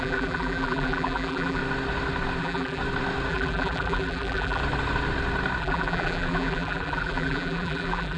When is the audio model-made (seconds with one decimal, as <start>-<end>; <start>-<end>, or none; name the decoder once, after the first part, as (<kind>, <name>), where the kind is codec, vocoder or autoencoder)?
0.0-1.6 (vocoder, BigVGAN v2); 2.4-2.8; 3.3-4.6; 5.6-8.2